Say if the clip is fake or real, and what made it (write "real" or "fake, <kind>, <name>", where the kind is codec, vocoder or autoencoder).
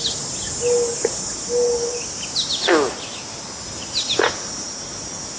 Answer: real